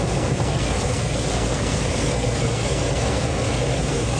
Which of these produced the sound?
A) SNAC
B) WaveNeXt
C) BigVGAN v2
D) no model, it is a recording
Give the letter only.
A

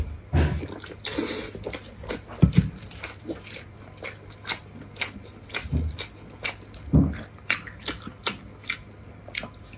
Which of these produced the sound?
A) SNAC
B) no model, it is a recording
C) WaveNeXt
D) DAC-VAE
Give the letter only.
B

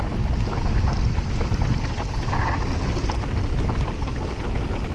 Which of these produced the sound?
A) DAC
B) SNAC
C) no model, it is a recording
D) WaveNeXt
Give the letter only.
C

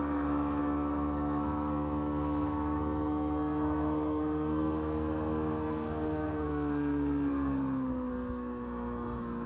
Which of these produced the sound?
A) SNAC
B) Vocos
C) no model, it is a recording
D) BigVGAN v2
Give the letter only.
A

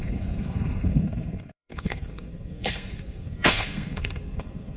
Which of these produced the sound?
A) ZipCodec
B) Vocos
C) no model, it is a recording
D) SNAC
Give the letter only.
D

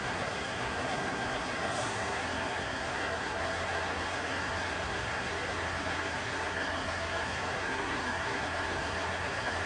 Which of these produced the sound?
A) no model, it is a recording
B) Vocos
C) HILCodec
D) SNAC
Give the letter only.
D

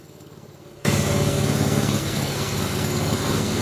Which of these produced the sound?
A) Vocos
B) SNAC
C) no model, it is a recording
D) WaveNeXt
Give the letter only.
B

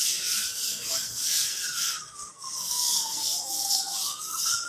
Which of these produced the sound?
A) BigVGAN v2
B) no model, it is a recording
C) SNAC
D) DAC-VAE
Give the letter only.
C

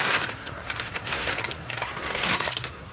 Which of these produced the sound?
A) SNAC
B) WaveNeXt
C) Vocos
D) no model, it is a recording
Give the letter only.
A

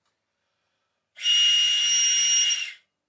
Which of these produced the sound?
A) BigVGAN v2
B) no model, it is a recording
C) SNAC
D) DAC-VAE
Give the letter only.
B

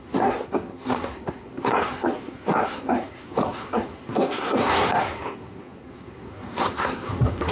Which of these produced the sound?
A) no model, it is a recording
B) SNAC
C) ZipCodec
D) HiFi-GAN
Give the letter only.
B